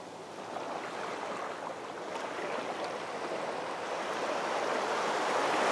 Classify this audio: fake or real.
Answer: real